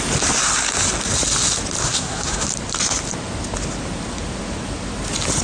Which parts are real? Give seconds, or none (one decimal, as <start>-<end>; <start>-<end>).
0.0-1.8; 2.5-5.4